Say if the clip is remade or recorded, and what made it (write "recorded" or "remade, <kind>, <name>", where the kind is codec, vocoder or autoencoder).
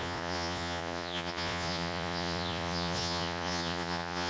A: remade, vocoder, Vocos